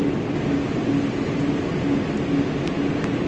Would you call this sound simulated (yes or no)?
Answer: no